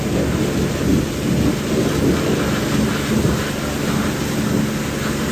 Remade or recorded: recorded